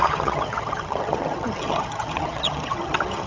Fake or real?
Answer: fake